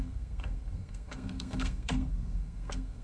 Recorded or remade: remade